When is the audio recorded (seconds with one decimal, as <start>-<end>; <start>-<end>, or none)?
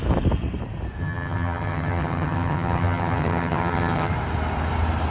0.0-1.0; 4.1-5.1